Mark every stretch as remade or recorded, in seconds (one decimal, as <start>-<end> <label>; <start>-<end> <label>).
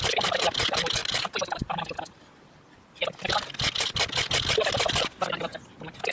0.0-6.1 recorded